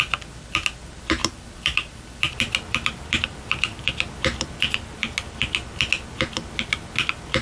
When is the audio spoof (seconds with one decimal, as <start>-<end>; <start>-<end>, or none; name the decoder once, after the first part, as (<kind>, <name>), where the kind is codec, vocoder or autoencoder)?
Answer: 1.2-3.9 (vocoder, BigVGAN v2)